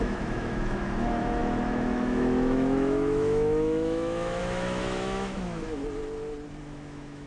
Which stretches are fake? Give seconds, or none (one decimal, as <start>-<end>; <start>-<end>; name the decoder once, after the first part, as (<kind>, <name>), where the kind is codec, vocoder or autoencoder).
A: 0.0-5.8 (autoencoder, DAC-VAE); 6.6-7.3